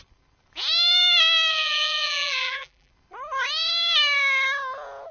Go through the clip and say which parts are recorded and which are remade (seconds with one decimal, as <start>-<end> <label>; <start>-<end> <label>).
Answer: 0.0-1.5 recorded; 1.5-2.9 remade; 2.9-5.1 recorded

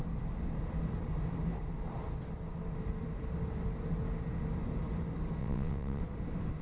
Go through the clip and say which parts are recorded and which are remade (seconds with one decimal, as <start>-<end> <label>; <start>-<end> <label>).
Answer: 0.0-5.4 recorded; 5.4-6.0 remade; 6.0-6.6 recorded

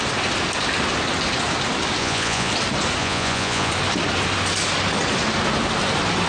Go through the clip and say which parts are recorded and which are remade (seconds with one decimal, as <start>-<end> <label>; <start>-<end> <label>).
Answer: 0.0-2.0 recorded; 2.0-2.5 remade; 2.5-3.0 recorded; 3.0-3.7 remade; 3.7-6.3 recorded